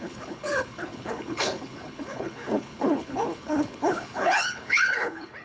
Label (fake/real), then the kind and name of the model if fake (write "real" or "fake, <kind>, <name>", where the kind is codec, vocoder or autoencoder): fake, codec, HILCodec